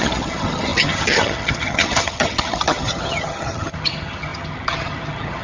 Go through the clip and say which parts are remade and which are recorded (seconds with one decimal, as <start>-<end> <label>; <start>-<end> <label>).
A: 0.0-5.4 remade